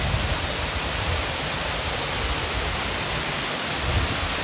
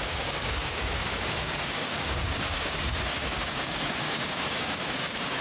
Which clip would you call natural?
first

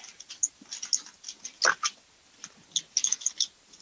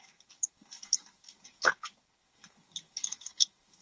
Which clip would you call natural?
first